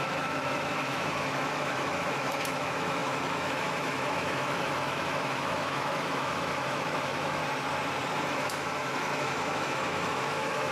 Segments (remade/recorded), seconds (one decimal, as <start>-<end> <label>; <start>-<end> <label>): 0.0-7.4 remade; 7.4-8.3 recorded; 8.3-10.7 remade